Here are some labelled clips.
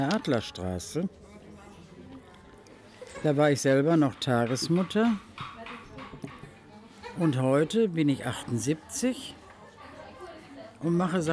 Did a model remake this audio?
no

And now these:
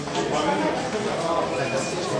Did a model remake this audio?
no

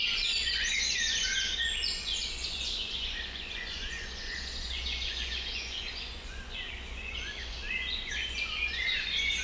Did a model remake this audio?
yes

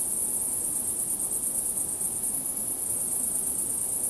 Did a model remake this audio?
no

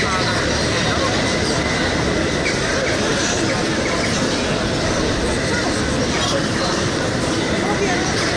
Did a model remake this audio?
no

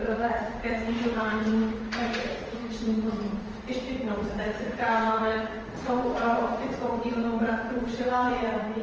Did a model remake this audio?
yes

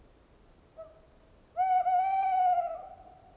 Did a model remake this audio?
no